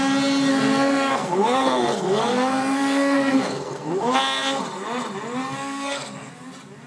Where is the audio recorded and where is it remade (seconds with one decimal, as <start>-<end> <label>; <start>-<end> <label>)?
0.0-0.5 recorded; 0.5-4.6 remade; 4.6-5.4 recorded; 5.4-6.3 remade; 6.3-6.9 recorded

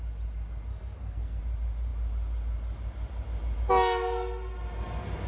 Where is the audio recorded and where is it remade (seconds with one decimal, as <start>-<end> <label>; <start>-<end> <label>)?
0.0-0.7 recorded; 0.7-1.4 remade; 1.4-5.3 recorded

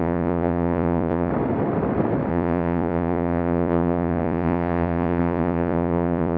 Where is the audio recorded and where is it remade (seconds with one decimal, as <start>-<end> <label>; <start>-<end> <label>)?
0.0-1.3 remade; 1.3-2.3 recorded; 2.3-6.4 remade

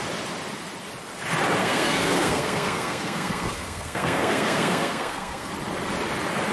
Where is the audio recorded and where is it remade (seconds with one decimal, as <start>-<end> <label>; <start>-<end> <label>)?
0.0-1.6 recorded; 1.6-5.5 remade; 5.5-6.5 recorded